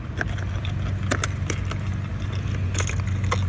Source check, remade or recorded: recorded